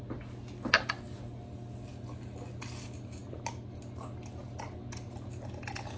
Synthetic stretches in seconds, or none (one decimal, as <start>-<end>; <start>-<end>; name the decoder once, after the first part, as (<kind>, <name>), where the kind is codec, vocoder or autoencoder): none